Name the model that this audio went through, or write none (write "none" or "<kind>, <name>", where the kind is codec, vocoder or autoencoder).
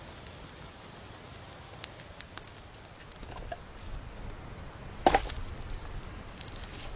none